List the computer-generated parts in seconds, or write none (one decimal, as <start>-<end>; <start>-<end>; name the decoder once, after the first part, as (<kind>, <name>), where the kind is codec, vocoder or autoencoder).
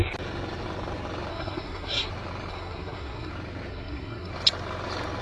1.3-2.1 (codec, SNAC); 2.5-3.3; 3.7-4.3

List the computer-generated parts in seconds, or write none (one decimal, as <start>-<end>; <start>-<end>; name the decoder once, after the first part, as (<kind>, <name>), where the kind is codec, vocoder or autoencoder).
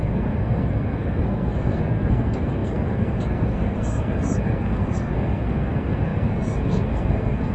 0.0-7.5 (codec, SNAC)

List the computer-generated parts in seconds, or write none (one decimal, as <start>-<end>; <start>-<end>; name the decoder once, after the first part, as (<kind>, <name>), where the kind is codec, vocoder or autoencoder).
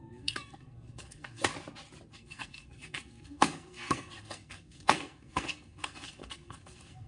0.0-1.5 (codec, SNAC); 2.1-7.1